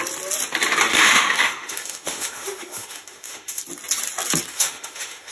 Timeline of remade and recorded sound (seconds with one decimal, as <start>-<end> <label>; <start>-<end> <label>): 0.0-0.9 recorded; 0.9-3.6 remade; 3.6-4.5 recorded; 4.5-5.3 remade